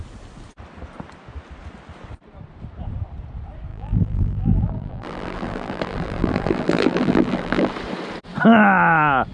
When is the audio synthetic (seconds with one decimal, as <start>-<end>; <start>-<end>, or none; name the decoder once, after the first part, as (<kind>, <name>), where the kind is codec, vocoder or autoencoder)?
3.7-7.7 (vocoder, BigVGAN v2)